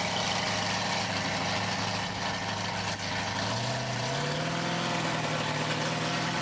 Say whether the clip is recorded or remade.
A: recorded